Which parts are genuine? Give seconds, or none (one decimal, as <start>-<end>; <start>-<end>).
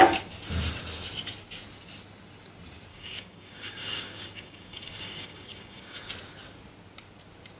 0.0-2.9; 6.1-7.6